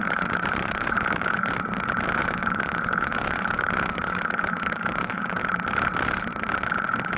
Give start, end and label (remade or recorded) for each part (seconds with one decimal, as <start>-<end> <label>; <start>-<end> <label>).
0.0-1.5 remade; 1.5-2.2 recorded; 2.2-5.4 remade; 5.4-7.2 recorded

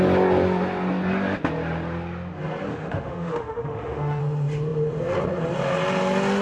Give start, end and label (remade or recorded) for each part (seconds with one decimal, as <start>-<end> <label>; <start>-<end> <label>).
0.0-2.7 recorded; 2.7-4.2 remade; 4.2-6.4 recorded

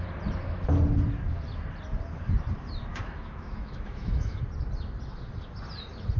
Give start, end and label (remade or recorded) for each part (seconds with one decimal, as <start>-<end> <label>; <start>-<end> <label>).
0.0-2.9 recorded; 2.9-4.4 remade; 4.4-6.2 recorded

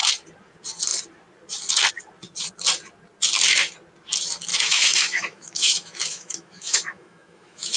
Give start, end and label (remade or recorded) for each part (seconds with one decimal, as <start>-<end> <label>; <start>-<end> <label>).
0.0-4.5 recorded; 4.5-7.8 remade

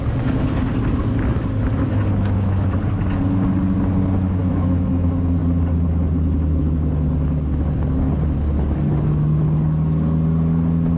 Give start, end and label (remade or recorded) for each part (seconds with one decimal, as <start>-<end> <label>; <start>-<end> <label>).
0.0-4.4 recorded; 4.4-4.9 remade; 4.9-11.0 recorded

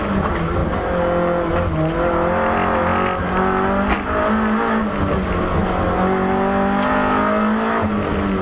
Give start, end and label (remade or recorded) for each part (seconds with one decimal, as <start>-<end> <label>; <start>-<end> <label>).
0.0-8.4 recorded

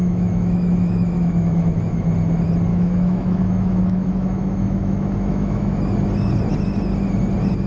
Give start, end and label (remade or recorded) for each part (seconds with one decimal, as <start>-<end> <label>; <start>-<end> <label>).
0.0-2.0 remade; 2.0-2.7 recorded; 2.7-5.8 remade; 5.8-7.7 recorded

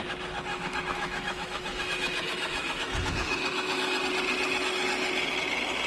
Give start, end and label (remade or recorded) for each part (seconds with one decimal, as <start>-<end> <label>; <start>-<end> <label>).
0.0-0.5 recorded; 0.5-4.0 remade; 4.0-5.9 recorded